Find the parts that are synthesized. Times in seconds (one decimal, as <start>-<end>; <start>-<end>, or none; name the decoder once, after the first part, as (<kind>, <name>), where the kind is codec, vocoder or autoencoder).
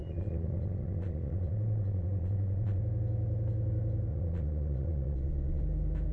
0.0-2.8 (vocoder, Vocos); 4.1-5.6